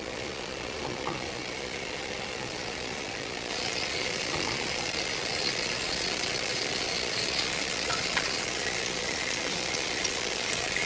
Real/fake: fake